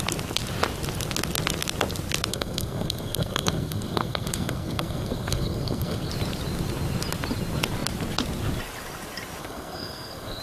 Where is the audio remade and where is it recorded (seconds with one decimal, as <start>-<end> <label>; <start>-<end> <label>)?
0.0-2.3 recorded; 2.3-6.1 remade; 6.1-9.4 recorded; 9.4-10.4 remade